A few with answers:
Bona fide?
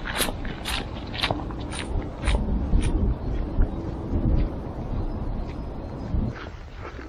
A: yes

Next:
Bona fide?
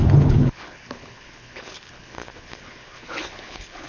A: no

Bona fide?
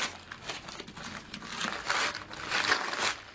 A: yes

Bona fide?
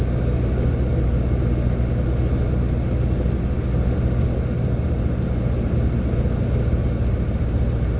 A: yes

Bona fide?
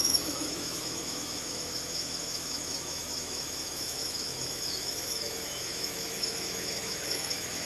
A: no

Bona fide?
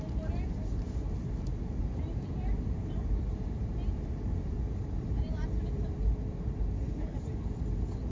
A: no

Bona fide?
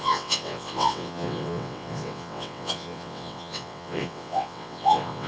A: no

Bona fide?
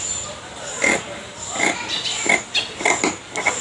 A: yes